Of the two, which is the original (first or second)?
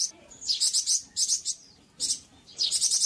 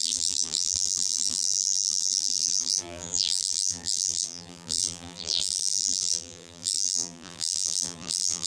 first